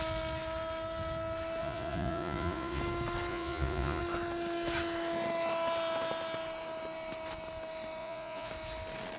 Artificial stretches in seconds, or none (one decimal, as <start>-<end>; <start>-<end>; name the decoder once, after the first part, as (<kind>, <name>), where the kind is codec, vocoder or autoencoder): 1.6-2.8 (vocoder, Vocos); 3.3-4.0; 8.0-8.5